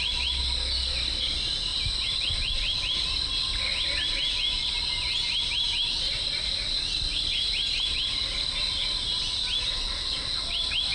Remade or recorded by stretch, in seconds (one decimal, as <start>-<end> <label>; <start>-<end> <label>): 0.0-10.9 recorded